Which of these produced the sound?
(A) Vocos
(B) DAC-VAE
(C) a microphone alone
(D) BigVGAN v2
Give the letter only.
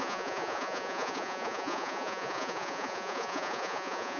A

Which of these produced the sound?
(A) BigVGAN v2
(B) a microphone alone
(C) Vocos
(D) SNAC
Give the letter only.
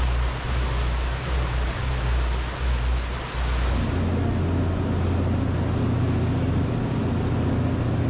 B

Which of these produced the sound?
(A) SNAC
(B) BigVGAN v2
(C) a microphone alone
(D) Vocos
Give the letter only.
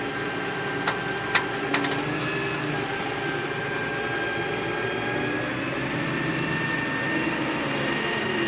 C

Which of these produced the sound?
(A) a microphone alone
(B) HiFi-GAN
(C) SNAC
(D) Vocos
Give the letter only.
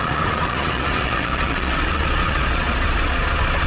D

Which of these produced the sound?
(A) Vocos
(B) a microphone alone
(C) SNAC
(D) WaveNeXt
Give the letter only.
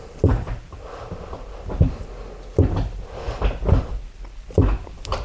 B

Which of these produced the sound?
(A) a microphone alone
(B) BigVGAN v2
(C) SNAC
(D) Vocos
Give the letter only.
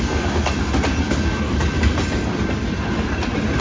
A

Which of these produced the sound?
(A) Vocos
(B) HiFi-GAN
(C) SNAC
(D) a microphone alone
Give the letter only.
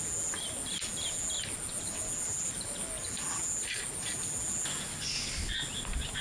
D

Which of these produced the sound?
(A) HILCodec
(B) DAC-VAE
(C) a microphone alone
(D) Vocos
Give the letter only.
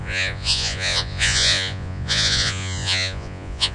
D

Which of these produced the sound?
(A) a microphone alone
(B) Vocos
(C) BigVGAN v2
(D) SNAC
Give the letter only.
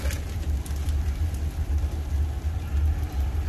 A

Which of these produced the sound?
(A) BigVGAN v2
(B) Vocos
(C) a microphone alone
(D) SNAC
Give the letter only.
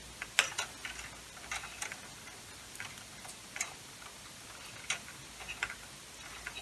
C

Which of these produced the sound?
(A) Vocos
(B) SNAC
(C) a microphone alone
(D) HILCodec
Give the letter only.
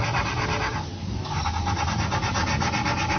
C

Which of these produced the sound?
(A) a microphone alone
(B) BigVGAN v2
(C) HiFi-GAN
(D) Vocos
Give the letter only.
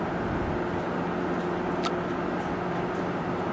A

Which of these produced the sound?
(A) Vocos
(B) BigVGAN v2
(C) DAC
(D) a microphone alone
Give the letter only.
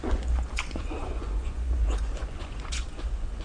A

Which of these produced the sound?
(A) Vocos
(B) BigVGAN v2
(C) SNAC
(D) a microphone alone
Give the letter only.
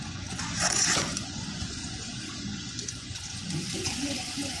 A